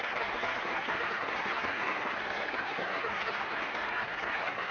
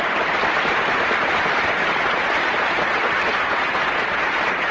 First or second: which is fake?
first